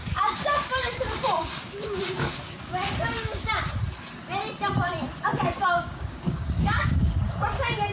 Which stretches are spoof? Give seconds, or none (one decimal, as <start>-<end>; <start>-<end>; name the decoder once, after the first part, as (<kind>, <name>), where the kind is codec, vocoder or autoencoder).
0.0-3.5 (codec, DAC); 5.3-7.2